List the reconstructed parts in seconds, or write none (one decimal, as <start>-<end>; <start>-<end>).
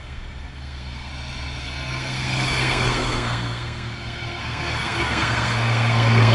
0.0-1.1; 1.6-6.3